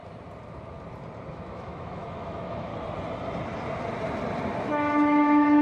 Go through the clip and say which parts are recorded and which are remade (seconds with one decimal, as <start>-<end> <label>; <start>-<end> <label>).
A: 0.0-1.3 recorded; 1.3-2.7 remade; 2.7-4.6 recorded; 4.6-5.6 remade